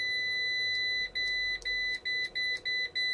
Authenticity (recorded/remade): recorded